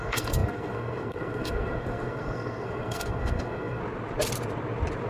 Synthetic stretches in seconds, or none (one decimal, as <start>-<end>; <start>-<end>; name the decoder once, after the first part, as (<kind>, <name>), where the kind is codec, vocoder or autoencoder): 0.0-3.8 (codec, SNAC)